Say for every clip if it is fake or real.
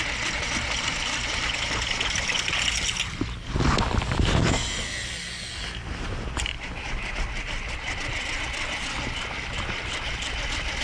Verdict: real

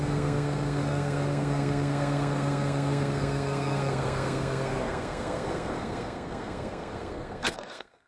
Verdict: fake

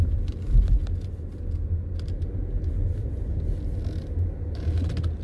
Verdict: real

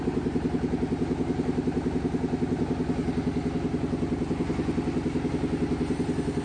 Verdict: real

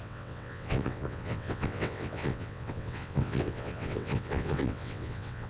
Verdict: fake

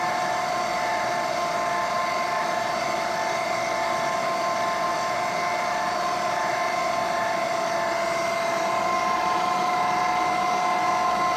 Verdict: real